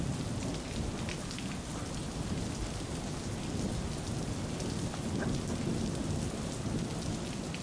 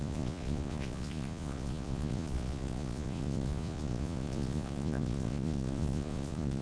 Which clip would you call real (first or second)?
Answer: first